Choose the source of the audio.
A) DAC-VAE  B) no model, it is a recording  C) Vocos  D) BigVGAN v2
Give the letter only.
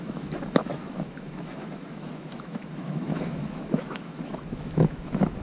A